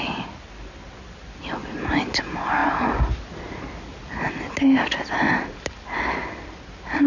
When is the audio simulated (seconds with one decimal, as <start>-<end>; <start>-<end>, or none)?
none